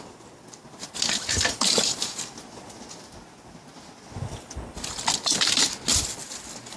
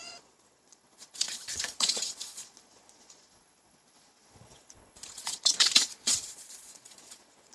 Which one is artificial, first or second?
second